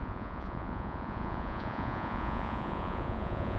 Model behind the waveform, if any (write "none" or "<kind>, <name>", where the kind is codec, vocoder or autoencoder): vocoder, Vocos